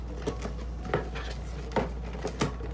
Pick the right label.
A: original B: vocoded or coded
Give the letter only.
A